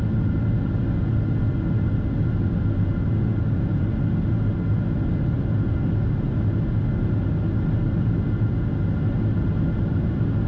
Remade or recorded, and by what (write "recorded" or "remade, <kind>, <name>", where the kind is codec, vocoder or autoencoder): recorded